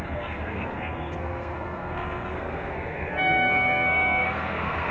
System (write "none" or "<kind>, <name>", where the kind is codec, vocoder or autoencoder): codec, SNAC